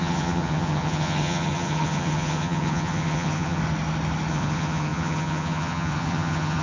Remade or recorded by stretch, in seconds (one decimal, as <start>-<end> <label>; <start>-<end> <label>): 0.0-3.6 remade; 3.6-4.3 recorded; 4.3-6.6 remade